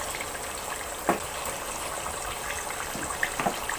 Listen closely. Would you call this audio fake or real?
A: real